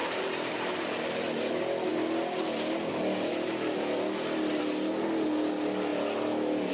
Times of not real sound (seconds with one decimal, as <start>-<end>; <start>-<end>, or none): 0.0-1.5